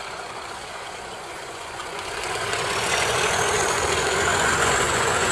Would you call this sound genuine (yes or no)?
no